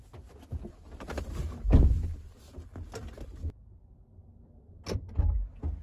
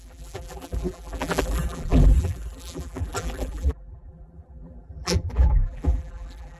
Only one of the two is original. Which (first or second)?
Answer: first